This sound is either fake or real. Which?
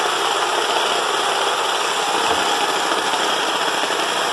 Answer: real